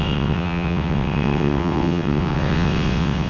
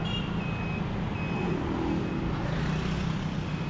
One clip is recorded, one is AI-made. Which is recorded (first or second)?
second